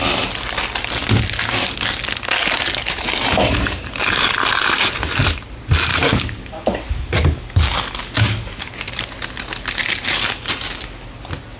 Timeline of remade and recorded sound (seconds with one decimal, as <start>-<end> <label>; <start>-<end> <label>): 0.0-5.9 recorded; 5.9-8.7 remade; 8.7-11.6 recorded